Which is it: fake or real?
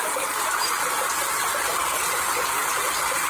real